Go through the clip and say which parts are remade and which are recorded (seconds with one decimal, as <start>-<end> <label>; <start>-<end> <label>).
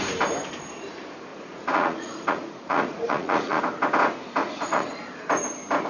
0.0-1.3 recorded; 1.3-3.6 remade; 3.6-4.4 recorded; 4.4-4.9 remade; 4.9-5.9 recorded